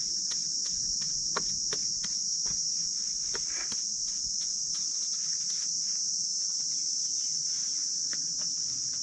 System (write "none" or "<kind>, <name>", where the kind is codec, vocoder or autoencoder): none